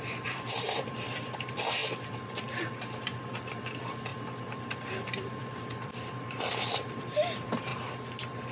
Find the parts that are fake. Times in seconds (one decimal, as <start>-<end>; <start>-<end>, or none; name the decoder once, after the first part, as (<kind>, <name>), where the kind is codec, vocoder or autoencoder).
0.0-7.7 (vocoder, BigVGAN v2)